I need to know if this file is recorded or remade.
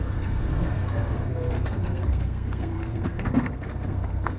remade